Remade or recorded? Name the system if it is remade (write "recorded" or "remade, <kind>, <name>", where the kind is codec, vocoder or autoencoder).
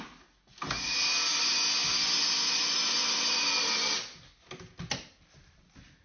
recorded